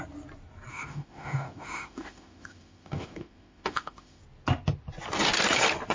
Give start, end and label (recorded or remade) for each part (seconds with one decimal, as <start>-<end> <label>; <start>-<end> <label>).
0.0-0.7 recorded; 0.7-4.2 remade; 4.2-5.9 recorded